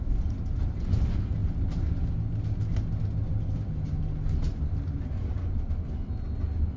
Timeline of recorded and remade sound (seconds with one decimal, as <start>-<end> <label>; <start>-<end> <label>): 0.0-6.8 recorded